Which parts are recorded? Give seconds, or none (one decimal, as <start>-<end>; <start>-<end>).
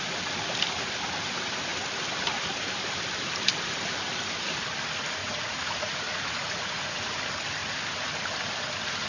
0.0-5.2; 7.0-9.1